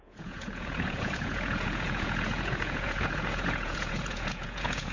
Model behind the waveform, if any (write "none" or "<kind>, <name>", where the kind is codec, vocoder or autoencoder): vocoder, Vocos